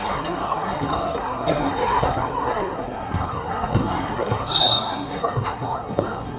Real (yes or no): no